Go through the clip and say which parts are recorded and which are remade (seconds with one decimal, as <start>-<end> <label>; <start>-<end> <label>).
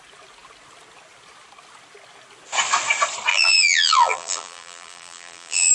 0.0-3.3 recorded; 3.3-5.7 remade